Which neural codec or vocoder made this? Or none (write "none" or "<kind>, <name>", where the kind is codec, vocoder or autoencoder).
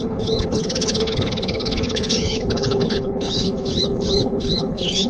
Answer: codec, HILCodec